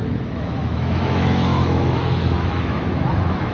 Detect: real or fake fake